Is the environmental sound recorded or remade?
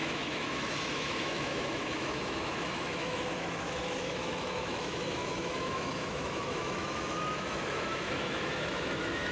remade